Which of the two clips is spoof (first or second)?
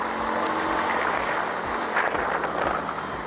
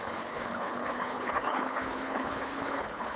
second